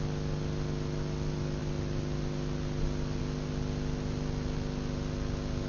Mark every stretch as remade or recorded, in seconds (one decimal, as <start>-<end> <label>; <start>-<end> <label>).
0.0-5.7 recorded